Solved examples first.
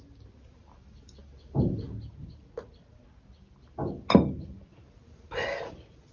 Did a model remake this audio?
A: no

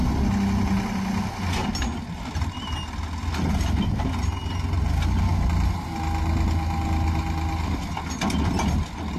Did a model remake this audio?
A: no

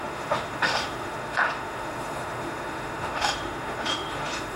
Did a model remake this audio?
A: yes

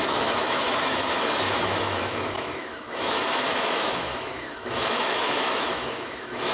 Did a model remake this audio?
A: yes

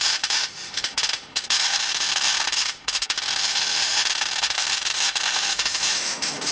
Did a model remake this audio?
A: yes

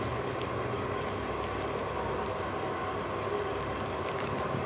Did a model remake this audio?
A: no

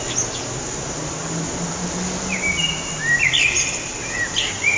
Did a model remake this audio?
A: no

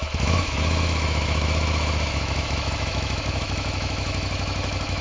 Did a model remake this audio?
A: yes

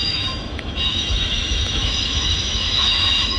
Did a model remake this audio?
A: yes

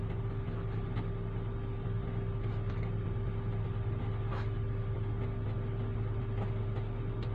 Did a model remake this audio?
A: no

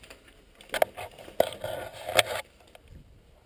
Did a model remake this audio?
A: no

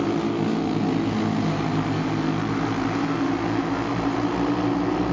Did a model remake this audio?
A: no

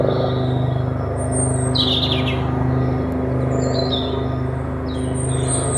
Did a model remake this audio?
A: no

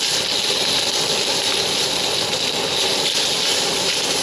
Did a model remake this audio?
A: no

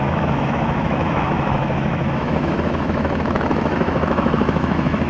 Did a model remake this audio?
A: yes